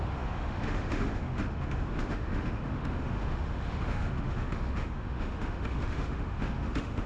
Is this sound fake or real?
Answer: fake